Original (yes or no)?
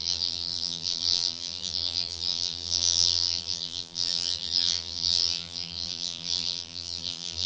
no